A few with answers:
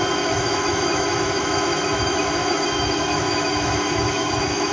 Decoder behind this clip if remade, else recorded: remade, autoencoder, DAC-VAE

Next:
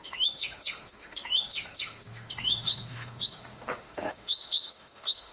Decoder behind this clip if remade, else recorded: remade, autoencoder, DAC-VAE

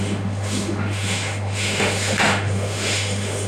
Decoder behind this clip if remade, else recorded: remade, autoencoder, DAC-VAE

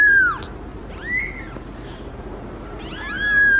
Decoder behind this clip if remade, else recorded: recorded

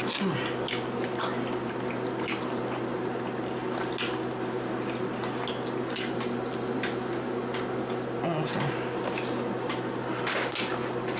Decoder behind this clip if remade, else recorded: recorded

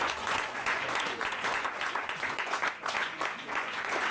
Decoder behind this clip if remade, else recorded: remade, vocoder, Vocos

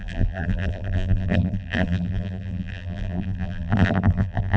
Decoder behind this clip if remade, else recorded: remade, vocoder, BigVGAN v2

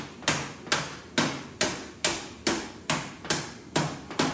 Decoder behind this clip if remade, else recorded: recorded